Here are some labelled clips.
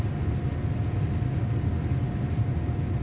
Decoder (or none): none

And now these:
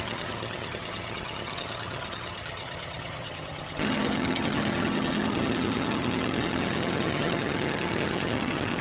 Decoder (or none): vocoder, HiFi-GAN